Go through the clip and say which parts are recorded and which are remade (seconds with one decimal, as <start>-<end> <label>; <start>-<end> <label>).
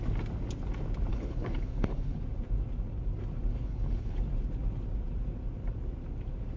0.0-1.1 recorded; 1.1-2.2 remade; 2.2-3.5 recorded; 3.5-4.2 remade; 4.2-6.6 recorded